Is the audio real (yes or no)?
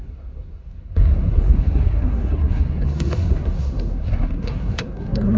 no